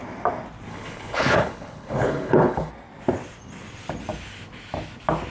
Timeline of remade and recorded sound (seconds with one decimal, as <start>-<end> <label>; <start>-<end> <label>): 0.0-0.7 recorded; 0.7-2.7 remade; 2.7-5.3 recorded